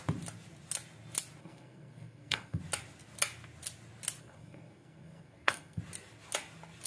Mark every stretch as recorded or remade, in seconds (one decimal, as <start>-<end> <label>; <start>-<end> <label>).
0.0-1.4 recorded; 1.4-2.6 remade; 2.6-4.2 recorded; 4.2-5.8 remade; 5.8-6.9 recorded